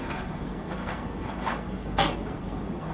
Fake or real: fake